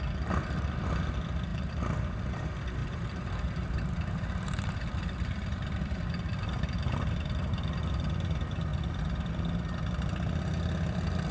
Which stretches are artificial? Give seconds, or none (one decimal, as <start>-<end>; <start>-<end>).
1.5-2.4; 2.8-7.9